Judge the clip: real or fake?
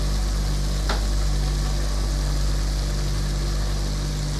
real